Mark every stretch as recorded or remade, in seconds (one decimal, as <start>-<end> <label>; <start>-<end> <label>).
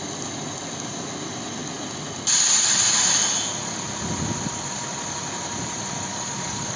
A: 0.0-6.1 recorded; 6.1-6.8 remade